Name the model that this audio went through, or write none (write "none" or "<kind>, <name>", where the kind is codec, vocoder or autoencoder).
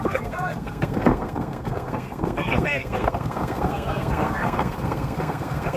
codec, SNAC